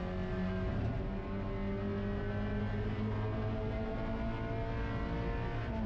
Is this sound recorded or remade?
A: recorded